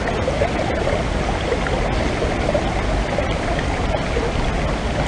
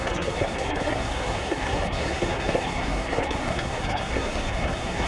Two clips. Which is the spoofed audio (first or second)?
second